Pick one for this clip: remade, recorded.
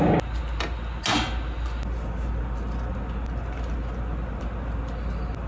recorded